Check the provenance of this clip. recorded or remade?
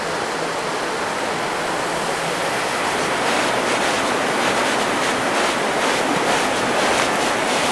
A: recorded